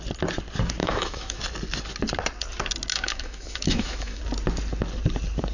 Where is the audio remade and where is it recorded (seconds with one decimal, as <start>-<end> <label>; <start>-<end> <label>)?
0.0-0.8 recorded; 0.8-1.4 remade; 1.4-2.9 recorded; 2.9-4.2 remade; 4.2-5.5 recorded